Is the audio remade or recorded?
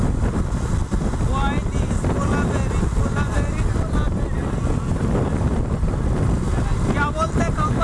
recorded